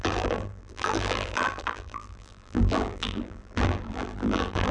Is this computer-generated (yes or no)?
yes